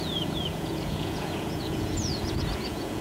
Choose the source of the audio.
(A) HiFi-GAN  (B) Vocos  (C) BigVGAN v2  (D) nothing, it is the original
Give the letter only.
B